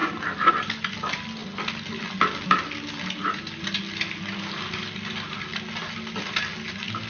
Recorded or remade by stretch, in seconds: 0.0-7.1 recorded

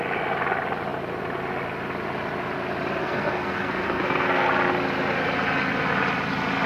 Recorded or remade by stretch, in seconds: 0.0-3.0 recorded; 3.0-4.5 remade; 4.5-6.7 recorded

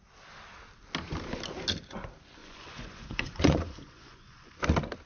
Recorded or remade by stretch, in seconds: 0.0-2.4 recorded; 2.4-4.5 remade; 4.5-5.1 recorded

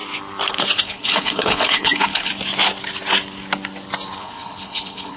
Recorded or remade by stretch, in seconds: 0.0-0.8 recorded; 0.8-2.3 remade; 2.3-4.2 recorded; 4.2-5.2 remade